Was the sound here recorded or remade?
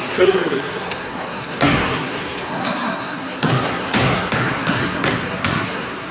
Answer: remade